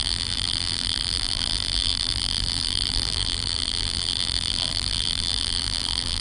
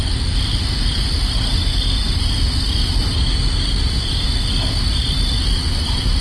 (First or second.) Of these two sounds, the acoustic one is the second